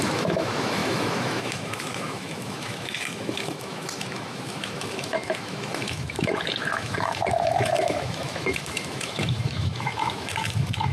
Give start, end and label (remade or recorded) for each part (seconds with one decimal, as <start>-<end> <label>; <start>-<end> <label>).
0.0-10.9 remade